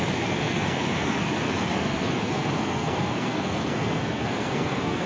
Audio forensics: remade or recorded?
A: remade